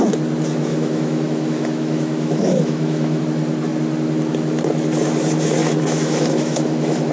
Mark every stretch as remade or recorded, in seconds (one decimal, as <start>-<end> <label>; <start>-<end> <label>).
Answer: 0.0-0.7 recorded; 0.7-3.2 remade; 3.2-5.6 recorded; 5.6-7.1 remade